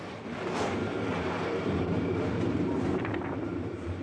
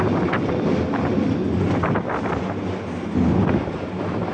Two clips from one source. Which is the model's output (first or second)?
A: first